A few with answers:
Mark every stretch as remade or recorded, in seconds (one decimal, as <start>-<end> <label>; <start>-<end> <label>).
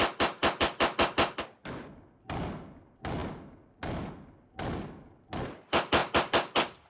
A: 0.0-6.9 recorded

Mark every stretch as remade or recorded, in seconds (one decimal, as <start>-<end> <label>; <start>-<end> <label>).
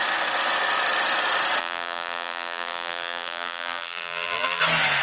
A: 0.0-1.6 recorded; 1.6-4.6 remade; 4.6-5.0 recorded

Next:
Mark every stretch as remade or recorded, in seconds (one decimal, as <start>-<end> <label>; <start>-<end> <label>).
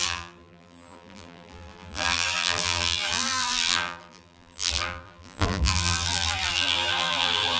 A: 0.0-7.6 remade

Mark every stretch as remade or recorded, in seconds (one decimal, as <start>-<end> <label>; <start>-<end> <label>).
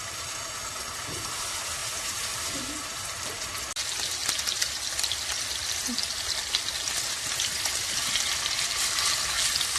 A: 0.0-1.8 recorded; 1.8-3.6 remade; 3.6-9.8 recorded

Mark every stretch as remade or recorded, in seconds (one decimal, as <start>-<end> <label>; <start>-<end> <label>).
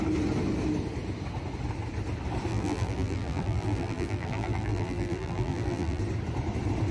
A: 0.0-2.5 recorded; 2.5-6.0 remade; 6.0-6.9 recorded